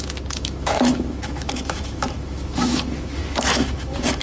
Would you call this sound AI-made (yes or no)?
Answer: yes